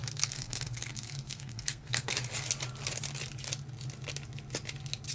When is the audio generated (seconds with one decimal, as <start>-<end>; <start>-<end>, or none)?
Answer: 0.0-2.2